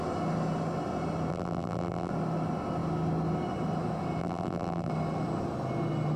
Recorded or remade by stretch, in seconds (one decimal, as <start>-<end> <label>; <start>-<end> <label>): 0.0-1.3 recorded; 1.3-2.1 remade; 2.1-4.2 recorded; 4.2-4.9 remade; 4.9-6.2 recorded